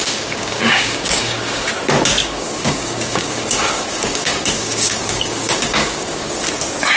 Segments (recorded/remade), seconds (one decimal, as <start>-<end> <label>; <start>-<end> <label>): 0.0-1.7 remade; 1.7-2.2 recorded; 2.2-6.4 remade; 6.4-7.0 recorded